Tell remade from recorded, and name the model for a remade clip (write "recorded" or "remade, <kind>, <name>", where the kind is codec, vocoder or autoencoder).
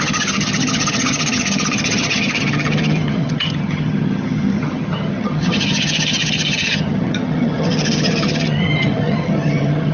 remade, vocoder, HiFi-GAN